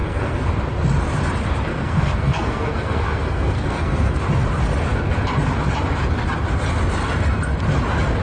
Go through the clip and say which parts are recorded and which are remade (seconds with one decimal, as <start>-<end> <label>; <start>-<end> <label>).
0.0-0.5 remade; 0.5-1.7 recorded; 1.7-4.2 remade; 4.2-8.2 recorded